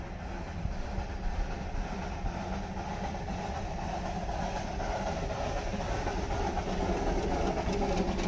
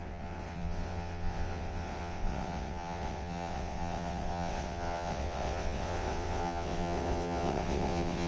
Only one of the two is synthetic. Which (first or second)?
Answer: second